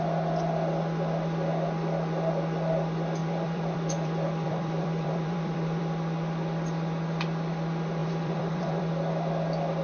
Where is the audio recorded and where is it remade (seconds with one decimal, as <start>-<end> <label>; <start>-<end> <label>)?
0.0-3.2 recorded; 3.2-5.8 remade; 5.8-8.0 recorded; 8.0-8.9 remade; 8.9-9.8 recorded